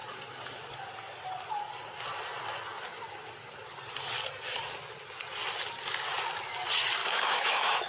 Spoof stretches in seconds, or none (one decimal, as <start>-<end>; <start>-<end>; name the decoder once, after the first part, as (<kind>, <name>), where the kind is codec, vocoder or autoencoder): 7.0-7.9 (autoencoder, DAC-VAE)